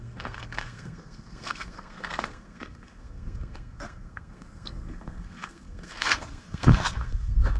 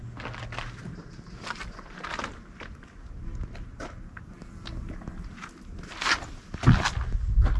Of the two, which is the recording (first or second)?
second